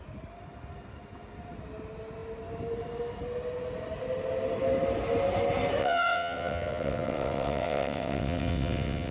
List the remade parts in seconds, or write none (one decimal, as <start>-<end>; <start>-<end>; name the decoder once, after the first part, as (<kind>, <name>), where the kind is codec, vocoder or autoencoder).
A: 5.8-9.1 (vocoder, WaveNeXt)